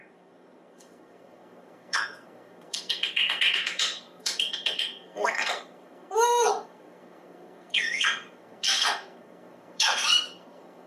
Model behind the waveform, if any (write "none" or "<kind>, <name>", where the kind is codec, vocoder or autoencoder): codec, SNAC